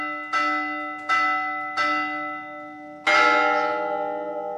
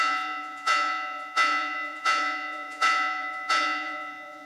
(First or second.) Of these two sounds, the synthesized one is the second